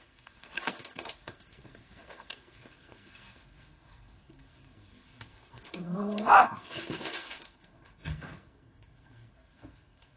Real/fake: fake